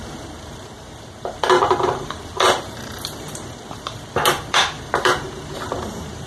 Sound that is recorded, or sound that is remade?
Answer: remade